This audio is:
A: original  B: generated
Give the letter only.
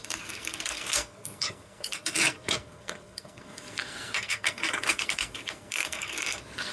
B